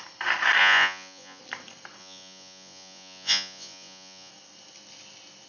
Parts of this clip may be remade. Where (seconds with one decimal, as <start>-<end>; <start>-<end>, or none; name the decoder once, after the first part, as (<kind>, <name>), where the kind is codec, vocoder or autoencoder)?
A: 0.6-1.4 (vocoder, Vocos); 2.0-4.3